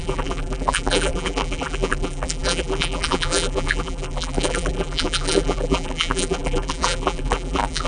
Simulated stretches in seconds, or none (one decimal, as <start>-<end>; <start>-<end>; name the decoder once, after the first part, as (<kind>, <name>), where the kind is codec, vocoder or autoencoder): 0.0-7.9 (vocoder, BigVGAN v2)